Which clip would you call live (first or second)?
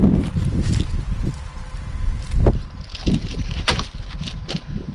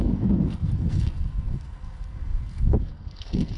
first